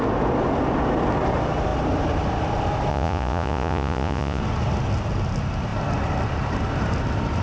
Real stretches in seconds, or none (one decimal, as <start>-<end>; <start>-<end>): 0.0-2.9; 4.4-7.4